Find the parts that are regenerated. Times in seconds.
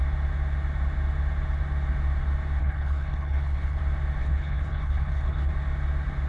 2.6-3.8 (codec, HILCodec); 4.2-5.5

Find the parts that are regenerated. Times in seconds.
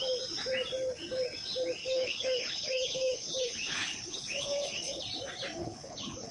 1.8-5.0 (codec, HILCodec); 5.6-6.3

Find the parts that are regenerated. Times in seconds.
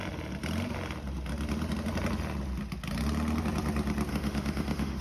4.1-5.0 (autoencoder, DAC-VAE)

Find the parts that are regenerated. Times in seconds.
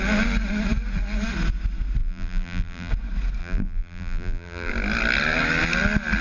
2.0-2.9 (vocoder, BigVGAN v2); 3.4-4.7